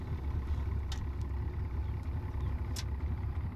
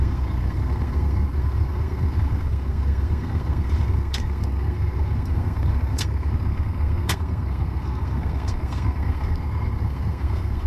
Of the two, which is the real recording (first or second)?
first